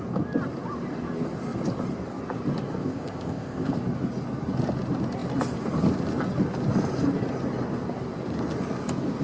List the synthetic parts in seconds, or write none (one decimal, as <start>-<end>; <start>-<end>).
2.8-3.7